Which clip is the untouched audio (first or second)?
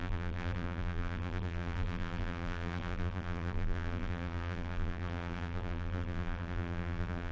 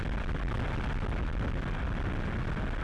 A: second